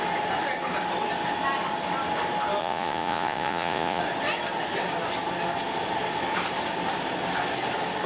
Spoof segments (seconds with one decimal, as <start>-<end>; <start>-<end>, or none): 2.6-4.0